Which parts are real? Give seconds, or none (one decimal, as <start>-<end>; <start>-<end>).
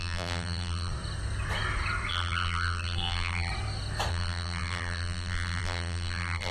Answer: 0.9-2.1; 3.5-4.1